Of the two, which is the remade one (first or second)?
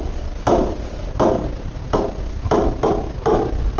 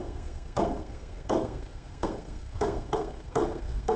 second